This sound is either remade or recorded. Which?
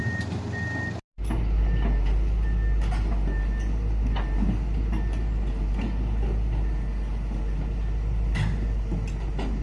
recorded